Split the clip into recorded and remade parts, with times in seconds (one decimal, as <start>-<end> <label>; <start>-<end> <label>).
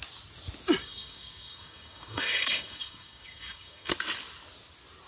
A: 0.0-0.8 recorded; 0.8-3.9 remade; 3.9-5.1 recorded